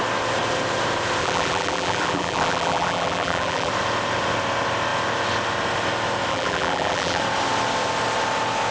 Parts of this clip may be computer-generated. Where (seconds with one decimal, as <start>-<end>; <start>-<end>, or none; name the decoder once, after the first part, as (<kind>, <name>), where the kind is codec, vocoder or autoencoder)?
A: 1.2-3.7 (vocoder, BigVGAN v2); 6.3-7.2